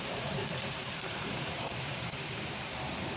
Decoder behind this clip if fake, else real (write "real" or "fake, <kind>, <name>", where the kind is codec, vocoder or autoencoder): fake, vocoder, BigVGAN v2